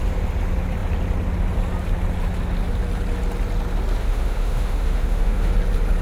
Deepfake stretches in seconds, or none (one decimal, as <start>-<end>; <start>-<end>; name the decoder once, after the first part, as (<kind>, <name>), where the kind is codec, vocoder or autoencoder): 4.0-5.5 (autoencoder, DAC-VAE)

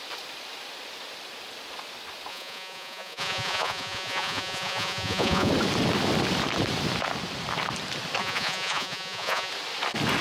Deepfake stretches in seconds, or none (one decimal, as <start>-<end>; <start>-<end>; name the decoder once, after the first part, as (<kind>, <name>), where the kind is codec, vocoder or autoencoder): 2.3-5.5 (vocoder, Vocos); 8.2-9.5

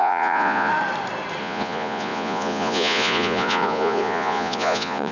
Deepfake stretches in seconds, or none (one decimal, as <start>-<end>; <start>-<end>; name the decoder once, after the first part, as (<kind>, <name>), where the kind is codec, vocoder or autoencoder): 0.0-0.7 (vocoder, Vocos); 1.4-5.1

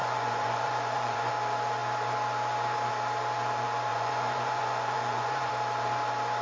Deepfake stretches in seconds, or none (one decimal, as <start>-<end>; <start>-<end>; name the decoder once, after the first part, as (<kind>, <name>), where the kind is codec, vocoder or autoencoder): 0.0-1.3 (vocoder, Vocos); 3.9-5.5

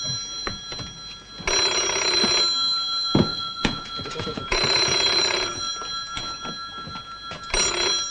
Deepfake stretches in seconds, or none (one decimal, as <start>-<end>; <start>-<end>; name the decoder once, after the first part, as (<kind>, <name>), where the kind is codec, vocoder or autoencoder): 3.3-5.7 (vocoder, Vocos)

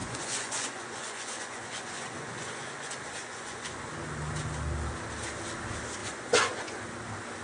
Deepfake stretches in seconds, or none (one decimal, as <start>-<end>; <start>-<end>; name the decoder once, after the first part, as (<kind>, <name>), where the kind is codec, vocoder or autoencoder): 0.0-3.9 (vocoder, Vocos); 6.0-6.8

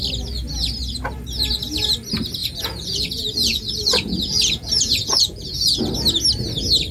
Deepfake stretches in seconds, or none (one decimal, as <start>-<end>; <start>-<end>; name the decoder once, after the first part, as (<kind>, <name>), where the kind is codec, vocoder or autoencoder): 2.4-5.8 (vocoder, Vocos)